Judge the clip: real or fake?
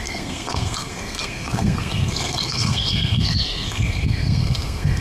fake